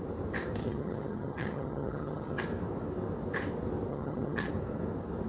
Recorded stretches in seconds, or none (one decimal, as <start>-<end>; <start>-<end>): 0.0-0.6; 2.4-3.9; 4.5-5.3